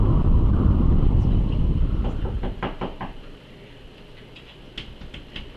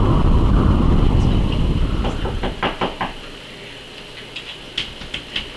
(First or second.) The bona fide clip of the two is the second